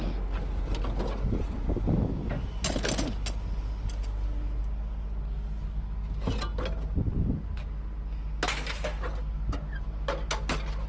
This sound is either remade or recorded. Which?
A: recorded